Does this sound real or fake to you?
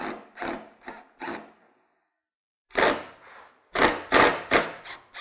real